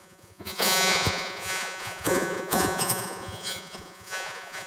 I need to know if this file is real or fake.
fake